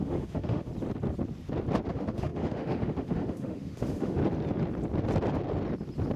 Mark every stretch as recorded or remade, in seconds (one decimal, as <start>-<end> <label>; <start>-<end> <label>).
0.0-0.7 remade; 0.7-1.9 recorded; 1.9-4.2 remade; 4.2-6.2 recorded